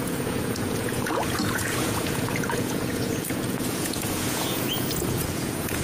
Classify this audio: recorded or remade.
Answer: remade